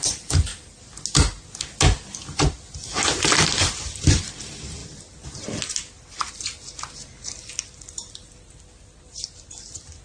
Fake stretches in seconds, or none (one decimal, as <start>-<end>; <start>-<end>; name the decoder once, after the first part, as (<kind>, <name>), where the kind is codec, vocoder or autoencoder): 0.0-0.5 (vocoder, BigVGAN v2); 2.1-4.8; 8.1-10.0